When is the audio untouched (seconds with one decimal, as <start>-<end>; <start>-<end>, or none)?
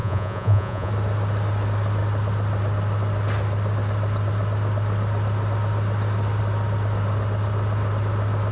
0.9-8.5